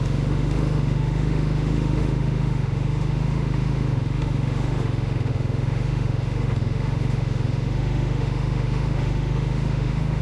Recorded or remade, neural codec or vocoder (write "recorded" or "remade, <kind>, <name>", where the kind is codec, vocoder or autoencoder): remade, autoencoder, DAC-VAE